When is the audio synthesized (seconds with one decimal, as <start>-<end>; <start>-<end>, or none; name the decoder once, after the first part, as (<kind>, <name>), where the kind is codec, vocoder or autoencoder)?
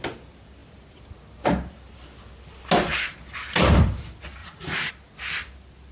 4.4-4.9 (vocoder, Vocos)